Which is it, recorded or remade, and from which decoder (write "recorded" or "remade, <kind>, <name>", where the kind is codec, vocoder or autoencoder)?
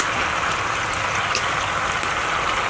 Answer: recorded